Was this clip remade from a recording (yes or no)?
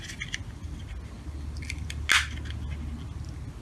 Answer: no